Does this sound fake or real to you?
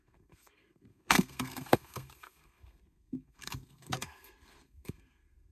fake